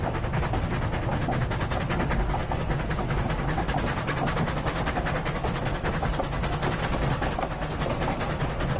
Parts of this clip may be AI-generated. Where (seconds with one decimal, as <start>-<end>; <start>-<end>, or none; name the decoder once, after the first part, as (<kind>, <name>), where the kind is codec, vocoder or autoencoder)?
none